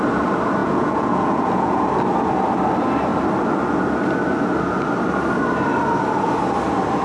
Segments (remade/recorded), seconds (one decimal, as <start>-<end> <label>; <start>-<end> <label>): 0.0-0.6 recorded; 0.6-1.8 remade; 1.8-7.0 recorded